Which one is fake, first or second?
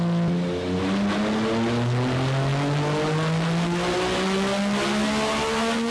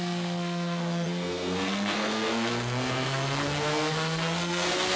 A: second